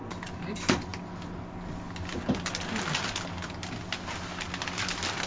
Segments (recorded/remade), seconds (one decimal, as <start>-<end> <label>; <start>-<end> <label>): 0.0-5.3 recorded